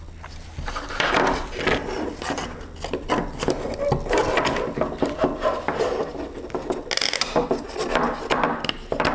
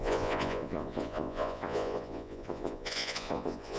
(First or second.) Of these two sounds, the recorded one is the first